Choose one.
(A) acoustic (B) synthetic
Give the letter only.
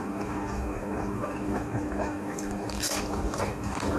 B